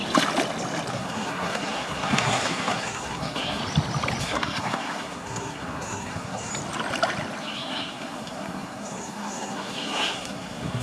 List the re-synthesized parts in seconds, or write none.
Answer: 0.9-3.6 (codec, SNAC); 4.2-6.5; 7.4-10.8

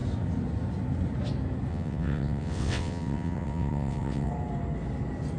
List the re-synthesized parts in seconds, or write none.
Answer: 1.7-4.3 (vocoder, WaveNeXt)

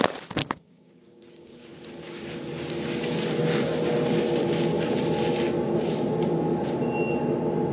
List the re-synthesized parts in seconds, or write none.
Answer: 0.4-1.7 (codec, DAC)